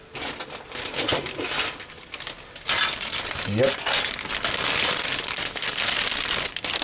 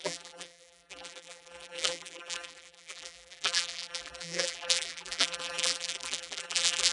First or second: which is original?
first